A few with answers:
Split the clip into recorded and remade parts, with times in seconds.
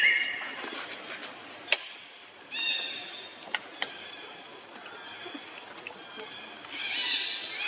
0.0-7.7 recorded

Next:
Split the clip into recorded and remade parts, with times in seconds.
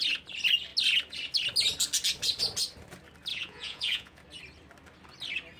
0.0-3.3 recorded; 3.3-4.2 remade; 4.2-5.6 recorded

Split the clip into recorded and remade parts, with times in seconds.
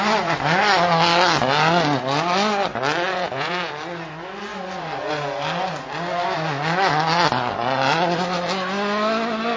0.0-3.1 recorded; 3.1-3.7 remade; 3.7-9.6 recorded